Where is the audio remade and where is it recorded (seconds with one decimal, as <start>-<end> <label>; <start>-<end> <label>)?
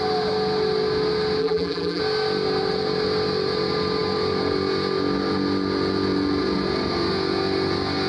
0.0-1.4 recorded; 1.4-2.0 remade; 2.0-8.1 recorded